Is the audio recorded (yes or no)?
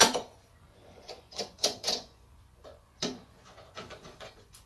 no